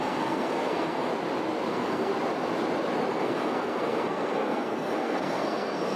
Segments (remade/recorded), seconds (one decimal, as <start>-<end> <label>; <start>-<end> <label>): 0.0-1.1 remade; 1.1-1.7 recorded; 1.7-2.1 remade; 2.1-3.1 recorded; 3.1-6.0 remade